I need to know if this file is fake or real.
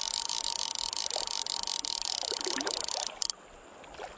real